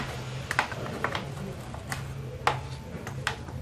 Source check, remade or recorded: recorded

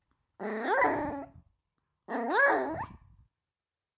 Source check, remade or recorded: recorded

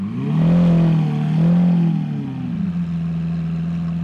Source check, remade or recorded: recorded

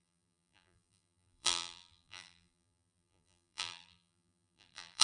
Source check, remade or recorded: remade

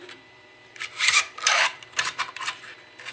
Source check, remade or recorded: remade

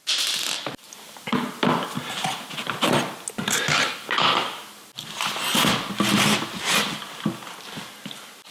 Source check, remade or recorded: recorded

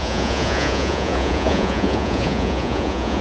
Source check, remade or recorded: remade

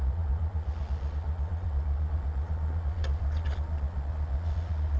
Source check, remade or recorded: remade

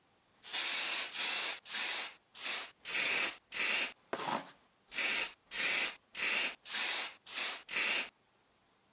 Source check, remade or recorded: recorded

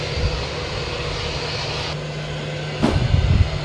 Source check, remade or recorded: recorded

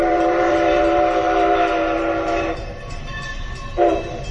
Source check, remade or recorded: remade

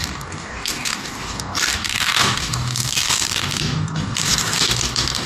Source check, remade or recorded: remade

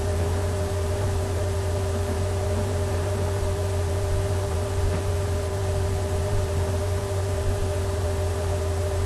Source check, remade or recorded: remade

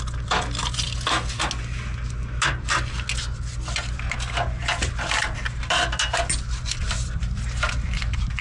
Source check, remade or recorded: recorded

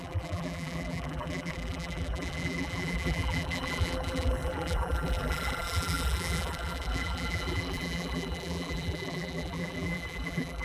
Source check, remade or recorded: remade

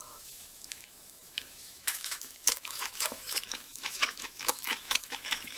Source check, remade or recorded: remade